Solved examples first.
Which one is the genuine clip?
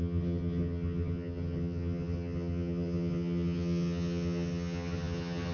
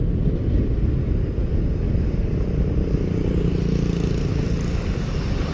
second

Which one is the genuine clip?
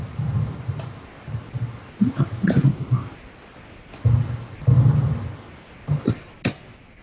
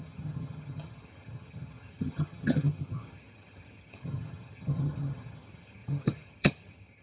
first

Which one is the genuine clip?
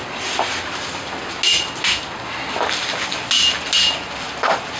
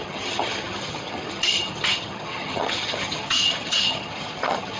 first